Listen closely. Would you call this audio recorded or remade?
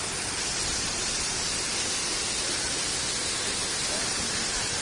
recorded